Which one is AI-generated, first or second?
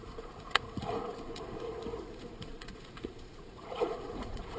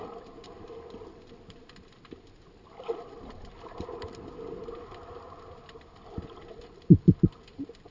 first